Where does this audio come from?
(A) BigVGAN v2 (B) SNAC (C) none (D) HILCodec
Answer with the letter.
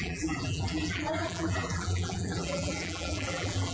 A